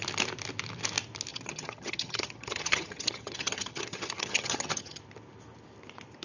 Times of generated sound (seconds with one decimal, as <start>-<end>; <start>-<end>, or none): 1.3-5.0